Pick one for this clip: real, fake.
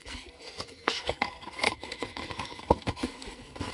fake